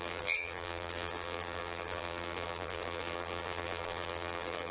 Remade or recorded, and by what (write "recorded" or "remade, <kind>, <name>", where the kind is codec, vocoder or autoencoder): remade, vocoder, BigVGAN v2